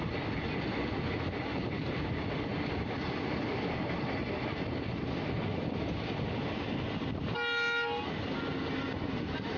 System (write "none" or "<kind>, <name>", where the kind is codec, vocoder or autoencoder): none